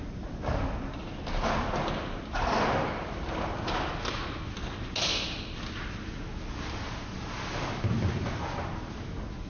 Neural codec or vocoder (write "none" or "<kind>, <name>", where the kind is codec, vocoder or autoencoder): none